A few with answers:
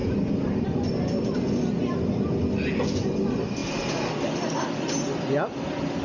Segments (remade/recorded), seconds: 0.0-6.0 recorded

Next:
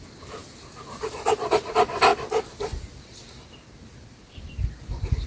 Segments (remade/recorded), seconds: 0.0-5.3 recorded

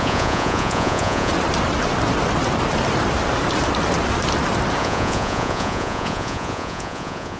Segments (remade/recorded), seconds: 0.0-1.3 remade; 1.3-4.8 recorded; 4.8-7.4 remade

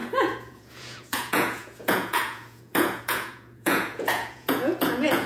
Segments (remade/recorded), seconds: 0.0-5.3 remade

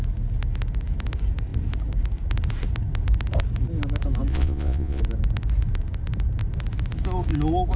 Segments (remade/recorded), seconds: 0.0-4.3 recorded; 4.3-5.0 remade; 5.0-7.8 recorded